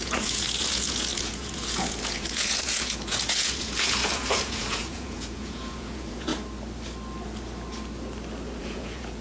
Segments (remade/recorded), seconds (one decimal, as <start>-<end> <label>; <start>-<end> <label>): 0.0-6.3 remade; 6.3-8.6 recorded; 8.6-9.2 remade